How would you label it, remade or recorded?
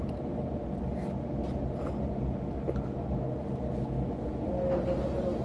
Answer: recorded